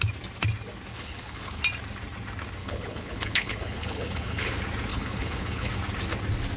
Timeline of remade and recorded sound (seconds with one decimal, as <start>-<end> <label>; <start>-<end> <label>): 0.0-0.9 recorded; 0.9-1.6 remade; 1.6-2.6 recorded; 2.6-4.5 remade; 4.5-4.9 recorded; 4.9-5.7 remade; 5.7-6.6 recorded